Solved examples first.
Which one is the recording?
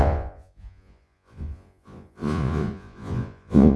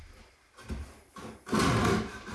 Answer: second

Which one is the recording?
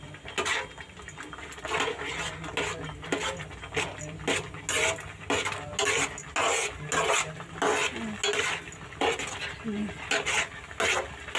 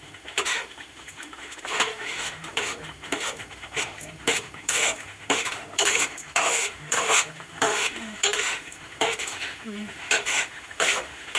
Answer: first